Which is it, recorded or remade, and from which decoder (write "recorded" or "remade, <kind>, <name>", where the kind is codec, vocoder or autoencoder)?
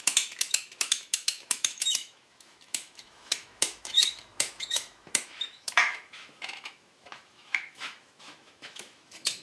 remade, autoencoder, DAC-VAE